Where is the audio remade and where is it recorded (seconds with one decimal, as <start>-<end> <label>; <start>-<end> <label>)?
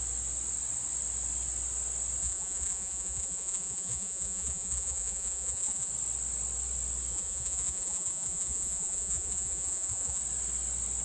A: 0.0-2.2 recorded; 2.2-5.9 remade; 5.9-7.1 recorded; 7.1-10.2 remade; 10.2-11.0 recorded